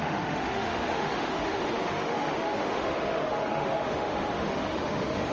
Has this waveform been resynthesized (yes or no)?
yes